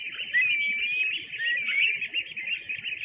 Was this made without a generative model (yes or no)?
yes